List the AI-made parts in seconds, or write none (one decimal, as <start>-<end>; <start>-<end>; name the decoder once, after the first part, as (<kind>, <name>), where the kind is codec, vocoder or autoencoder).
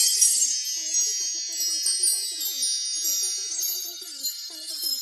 0.0-0.5 (codec, SNAC); 3.5-5.0